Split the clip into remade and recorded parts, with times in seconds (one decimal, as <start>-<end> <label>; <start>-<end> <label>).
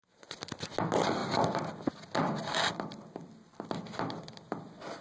0.0-5.0 recorded